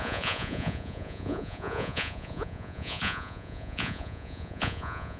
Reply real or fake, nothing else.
fake